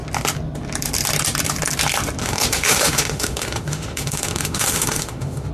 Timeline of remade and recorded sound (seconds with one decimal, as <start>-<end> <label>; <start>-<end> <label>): 0.0-2.2 recorded; 2.2-5.5 remade